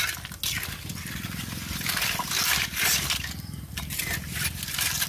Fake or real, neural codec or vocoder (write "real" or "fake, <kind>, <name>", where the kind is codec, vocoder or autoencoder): real